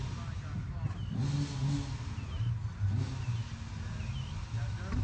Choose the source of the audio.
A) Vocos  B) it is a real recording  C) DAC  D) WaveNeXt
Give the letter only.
B